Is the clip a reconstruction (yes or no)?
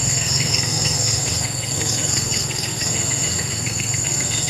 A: yes